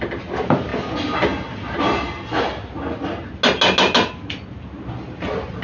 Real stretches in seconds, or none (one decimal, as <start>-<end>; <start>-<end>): 0.0-5.6